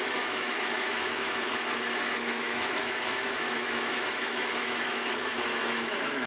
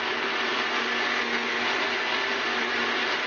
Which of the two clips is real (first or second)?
second